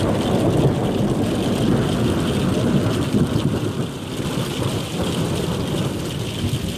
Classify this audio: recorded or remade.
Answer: recorded